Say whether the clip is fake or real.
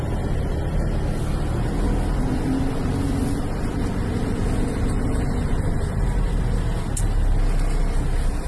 real